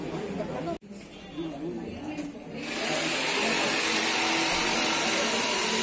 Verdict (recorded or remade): recorded